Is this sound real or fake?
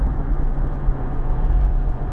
fake